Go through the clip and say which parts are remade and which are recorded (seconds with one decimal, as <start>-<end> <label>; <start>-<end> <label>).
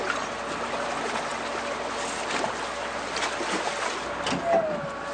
0.0-5.1 recorded